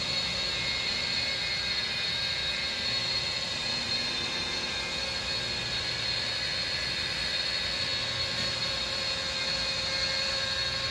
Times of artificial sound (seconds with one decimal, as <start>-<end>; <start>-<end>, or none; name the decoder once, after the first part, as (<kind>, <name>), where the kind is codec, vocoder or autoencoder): 3.0-3.9 (vocoder, BigVGAN v2); 6.8-7.5